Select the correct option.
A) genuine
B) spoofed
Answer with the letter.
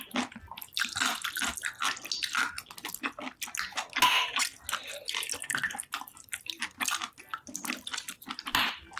A